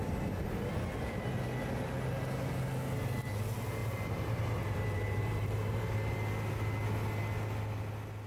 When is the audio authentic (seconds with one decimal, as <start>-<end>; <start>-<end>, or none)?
0.0-3.8; 5.8-8.3